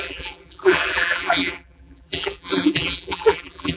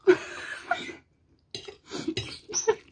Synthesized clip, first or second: first